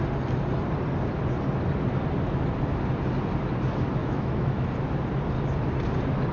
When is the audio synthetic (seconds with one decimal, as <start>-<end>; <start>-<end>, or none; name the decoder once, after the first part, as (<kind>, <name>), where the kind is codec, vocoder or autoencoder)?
4.0-4.7 (autoencoder, DAC-VAE)